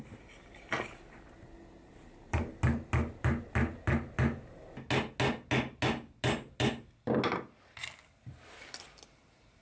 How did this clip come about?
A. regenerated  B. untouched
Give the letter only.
B